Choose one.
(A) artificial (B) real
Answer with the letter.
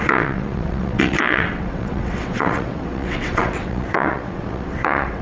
A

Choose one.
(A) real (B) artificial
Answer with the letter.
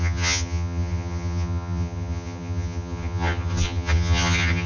B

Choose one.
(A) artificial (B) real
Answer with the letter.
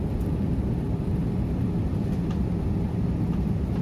B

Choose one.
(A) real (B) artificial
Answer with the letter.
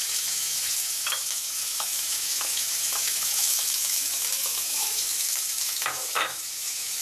B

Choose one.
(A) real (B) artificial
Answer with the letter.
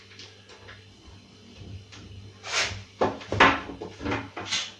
A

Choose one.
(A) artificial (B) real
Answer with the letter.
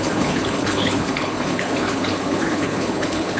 A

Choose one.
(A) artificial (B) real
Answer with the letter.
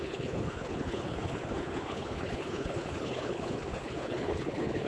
A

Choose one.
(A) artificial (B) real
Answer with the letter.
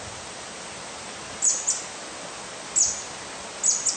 B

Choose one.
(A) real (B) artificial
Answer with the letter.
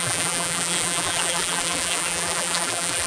B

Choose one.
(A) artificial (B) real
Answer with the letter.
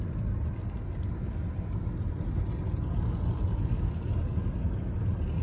B